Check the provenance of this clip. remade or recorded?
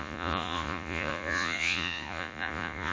remade